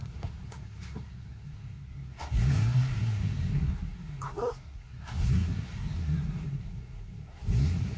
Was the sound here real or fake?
fake